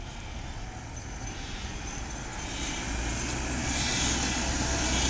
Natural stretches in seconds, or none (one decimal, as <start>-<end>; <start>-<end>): 0.0-1.3; 1.8-5.1